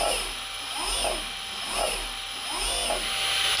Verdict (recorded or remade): recorded